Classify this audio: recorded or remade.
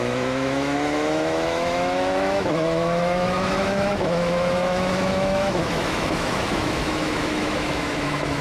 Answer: remade